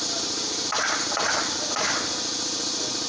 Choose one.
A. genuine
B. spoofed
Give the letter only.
A